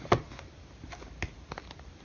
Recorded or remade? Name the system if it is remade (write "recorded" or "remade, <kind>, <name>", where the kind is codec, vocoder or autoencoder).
recorded